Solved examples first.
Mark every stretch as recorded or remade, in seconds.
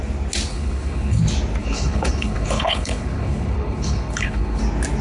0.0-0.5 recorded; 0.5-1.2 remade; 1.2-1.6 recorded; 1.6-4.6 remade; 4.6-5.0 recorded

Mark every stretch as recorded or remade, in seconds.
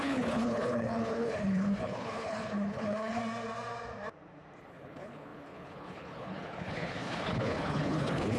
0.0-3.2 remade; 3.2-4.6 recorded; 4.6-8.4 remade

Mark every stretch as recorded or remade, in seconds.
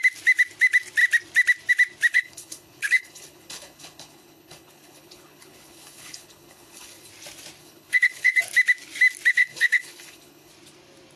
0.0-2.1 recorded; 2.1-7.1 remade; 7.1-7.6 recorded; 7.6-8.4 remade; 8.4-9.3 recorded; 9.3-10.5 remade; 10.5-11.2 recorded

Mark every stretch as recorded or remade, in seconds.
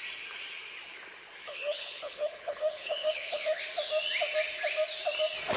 0.0-1.4 recorded; 1.4-3.6 remade; 3.6-5.6 recorded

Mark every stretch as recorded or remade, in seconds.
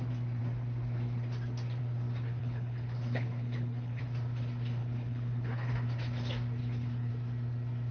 0.0-2.4 recorded; 2.4-4.0 remade; 4.0-4.8 recorded; 4.8-5.7 remade; 5.7-6.6 recorded; 6.6-7.1 remade; 7.1-7.9 recorded